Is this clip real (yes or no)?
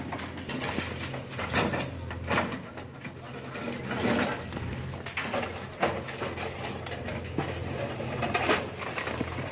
yes